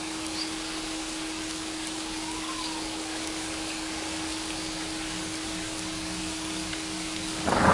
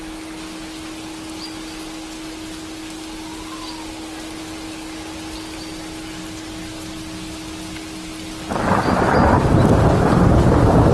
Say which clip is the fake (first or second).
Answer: first